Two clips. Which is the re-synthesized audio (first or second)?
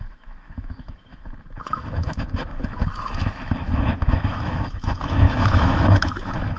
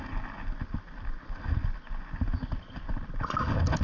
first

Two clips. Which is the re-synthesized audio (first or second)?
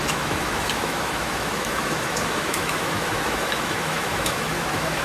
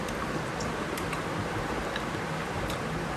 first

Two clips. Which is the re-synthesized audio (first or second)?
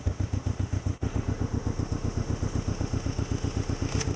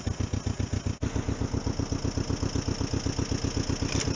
first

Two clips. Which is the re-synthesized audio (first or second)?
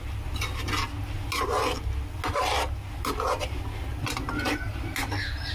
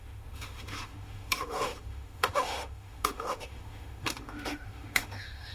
second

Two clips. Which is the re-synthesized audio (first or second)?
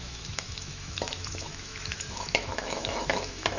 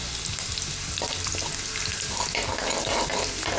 first